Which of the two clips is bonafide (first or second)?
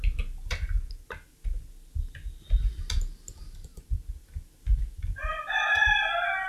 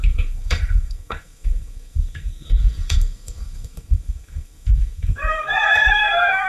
first